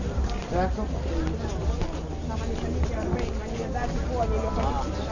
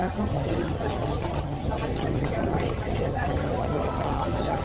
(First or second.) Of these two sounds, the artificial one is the second